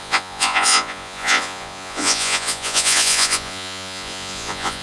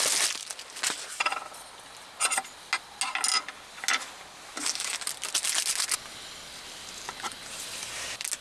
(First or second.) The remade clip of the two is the first